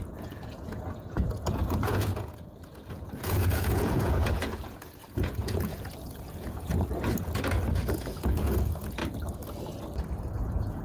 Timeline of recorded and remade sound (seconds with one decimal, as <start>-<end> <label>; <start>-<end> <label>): 0.0-6.7 remade; 6.7-7.7 recorded; 7.7-9.0 remade; 9.0-10.3 recorded; 10.3-10.8 remade